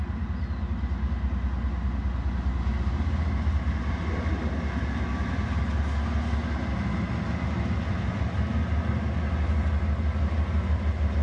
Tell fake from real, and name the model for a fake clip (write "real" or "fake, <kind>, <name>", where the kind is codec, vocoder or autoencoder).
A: real